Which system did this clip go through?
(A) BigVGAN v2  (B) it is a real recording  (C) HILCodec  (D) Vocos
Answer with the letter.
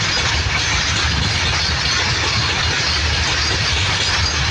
B